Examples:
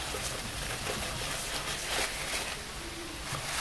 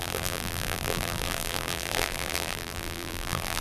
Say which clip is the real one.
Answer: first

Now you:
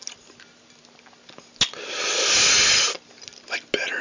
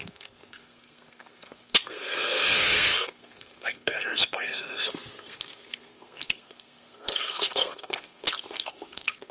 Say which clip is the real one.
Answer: first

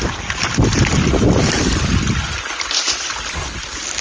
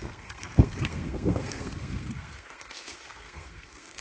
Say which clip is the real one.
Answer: first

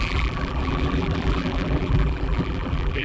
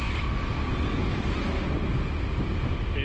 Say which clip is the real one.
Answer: second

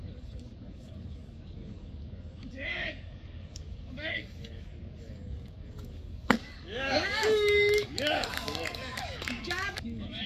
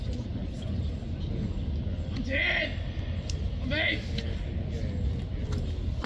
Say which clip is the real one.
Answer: second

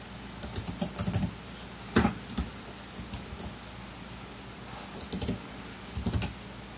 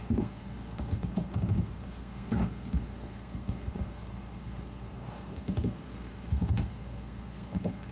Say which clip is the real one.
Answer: first